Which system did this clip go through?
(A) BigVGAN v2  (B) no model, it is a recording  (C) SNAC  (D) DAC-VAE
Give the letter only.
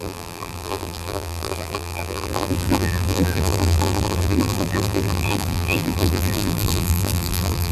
A